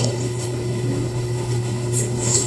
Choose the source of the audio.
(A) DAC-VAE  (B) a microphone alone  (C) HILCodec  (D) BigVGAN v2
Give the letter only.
C